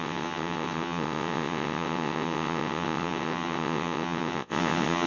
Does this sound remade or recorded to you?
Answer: remade